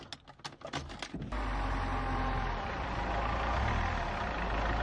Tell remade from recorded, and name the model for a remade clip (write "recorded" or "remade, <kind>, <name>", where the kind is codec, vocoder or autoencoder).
recorded